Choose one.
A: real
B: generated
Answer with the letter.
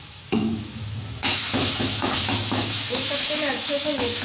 B